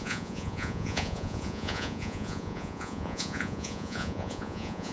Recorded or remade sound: remade